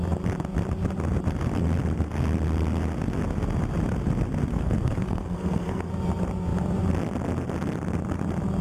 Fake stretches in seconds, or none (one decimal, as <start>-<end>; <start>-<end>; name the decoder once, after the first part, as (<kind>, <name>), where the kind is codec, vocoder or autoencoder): 4.5-5.9 (codec, SNAC)